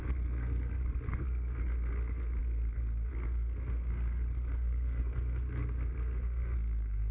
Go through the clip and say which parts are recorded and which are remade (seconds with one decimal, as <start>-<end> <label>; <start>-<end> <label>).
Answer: 0.0-7.1 remade

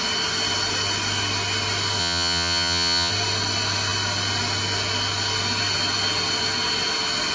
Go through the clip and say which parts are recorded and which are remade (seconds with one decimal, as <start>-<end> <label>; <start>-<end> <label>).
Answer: 0.0-2.0 recorded; 2.0-3.1 remade; 3.1-7.3 recorded